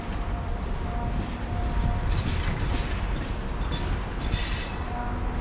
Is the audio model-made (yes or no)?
no